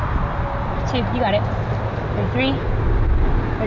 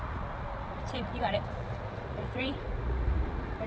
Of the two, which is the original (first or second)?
first